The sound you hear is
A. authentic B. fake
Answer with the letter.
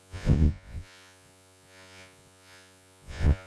B